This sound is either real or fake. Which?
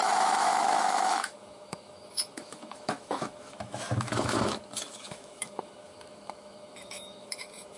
fake